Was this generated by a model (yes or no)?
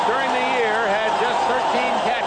no